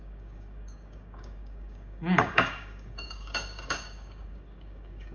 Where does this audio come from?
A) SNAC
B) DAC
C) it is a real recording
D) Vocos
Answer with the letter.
B